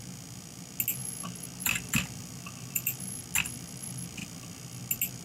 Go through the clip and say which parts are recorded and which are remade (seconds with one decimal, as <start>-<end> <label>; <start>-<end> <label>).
0.0-1.0 recorded; 1.0-3.2 remade; 3.2-4.2 recorded; 4.2-4.8 remade; 4.8-5.2 recorded